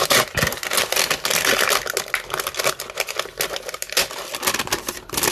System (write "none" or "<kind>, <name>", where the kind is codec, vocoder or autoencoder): none